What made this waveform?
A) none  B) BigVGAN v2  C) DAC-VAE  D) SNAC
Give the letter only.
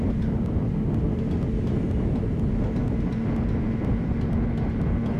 A